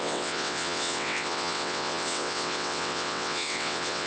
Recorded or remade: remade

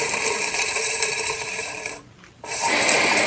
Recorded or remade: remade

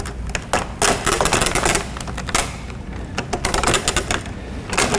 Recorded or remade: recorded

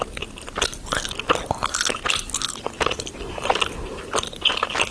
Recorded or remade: recorded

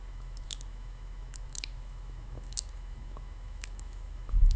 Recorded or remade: remade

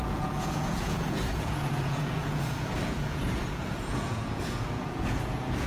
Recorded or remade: remade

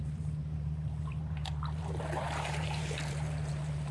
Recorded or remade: remade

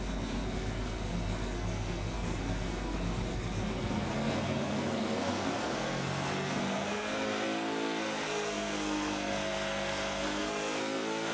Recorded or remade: remade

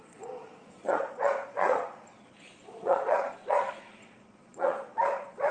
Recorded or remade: remade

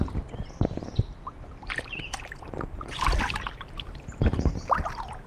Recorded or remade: remade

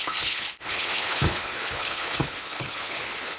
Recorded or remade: remade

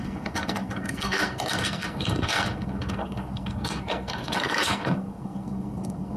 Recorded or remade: remade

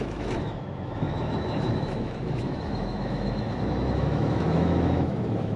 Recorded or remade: remade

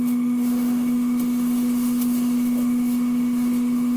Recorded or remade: remade